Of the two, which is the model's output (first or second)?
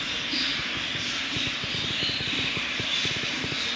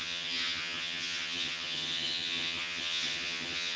second